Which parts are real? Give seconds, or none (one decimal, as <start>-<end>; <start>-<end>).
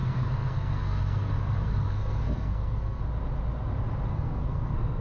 3.0-4.1